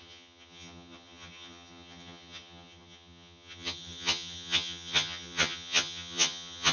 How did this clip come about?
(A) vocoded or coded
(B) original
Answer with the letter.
A